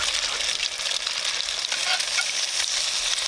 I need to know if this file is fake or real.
real